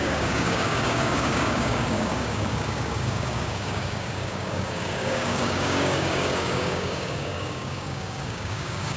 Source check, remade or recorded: remade